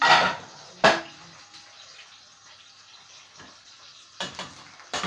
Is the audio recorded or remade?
recorded